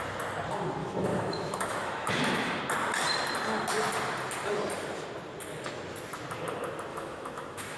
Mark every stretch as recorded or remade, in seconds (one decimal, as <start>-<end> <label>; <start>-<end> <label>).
0.0-0.8 recorded; 0.8-2.6 remade; 2.6-6.9 recorded; 6.9-7.8 remade